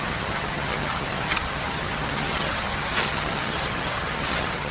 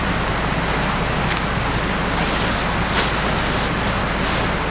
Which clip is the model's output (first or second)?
first